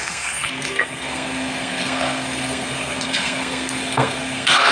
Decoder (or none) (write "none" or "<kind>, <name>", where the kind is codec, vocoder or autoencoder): codec, SNAC